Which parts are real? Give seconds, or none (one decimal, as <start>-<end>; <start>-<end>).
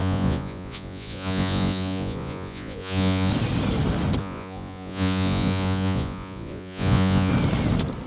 3.3-4.2; 7.3-8.1